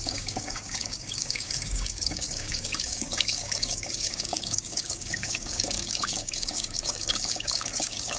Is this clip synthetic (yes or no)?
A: yes